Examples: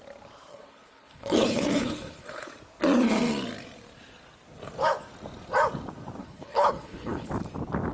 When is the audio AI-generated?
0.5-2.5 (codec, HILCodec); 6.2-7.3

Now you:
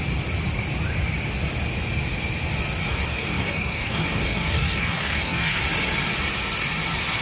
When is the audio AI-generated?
2.8-5.6 (codec, DAC)

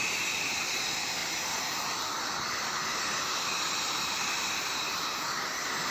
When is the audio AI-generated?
none

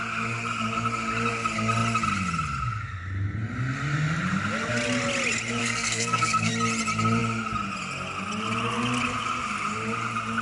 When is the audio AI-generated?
5.6-6.5 (codec, SNAC)